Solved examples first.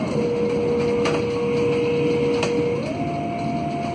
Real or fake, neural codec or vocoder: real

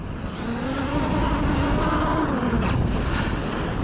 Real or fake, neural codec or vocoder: real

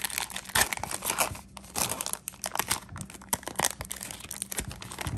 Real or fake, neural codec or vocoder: real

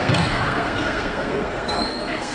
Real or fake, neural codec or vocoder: fake, codec, SNAC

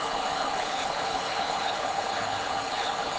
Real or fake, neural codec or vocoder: fake, codec, HILCodec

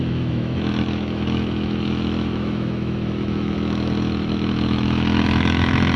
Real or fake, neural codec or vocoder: fake, autoencoder, DAC-VAE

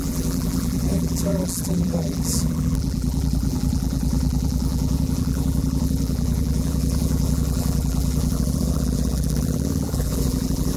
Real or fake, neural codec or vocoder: fake, vocoder, BigVGAN v2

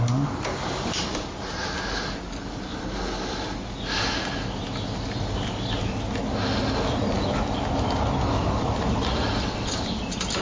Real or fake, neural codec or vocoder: real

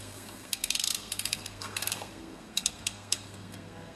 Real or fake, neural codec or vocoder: fake, codec, SNAC